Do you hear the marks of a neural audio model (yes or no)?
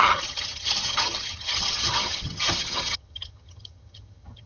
yes